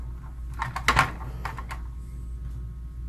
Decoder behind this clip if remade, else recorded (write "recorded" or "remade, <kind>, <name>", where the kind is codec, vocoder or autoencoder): recorded